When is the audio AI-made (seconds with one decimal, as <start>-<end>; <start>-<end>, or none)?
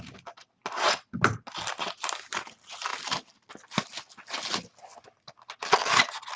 none